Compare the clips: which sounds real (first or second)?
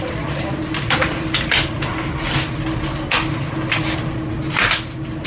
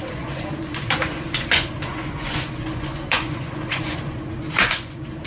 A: first